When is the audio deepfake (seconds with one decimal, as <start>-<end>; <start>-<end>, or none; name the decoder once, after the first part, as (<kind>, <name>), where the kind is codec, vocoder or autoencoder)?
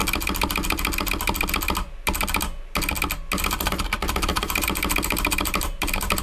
4.3-6.2 (vocoder, BigVGAN v2)